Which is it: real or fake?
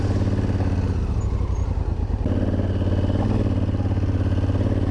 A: real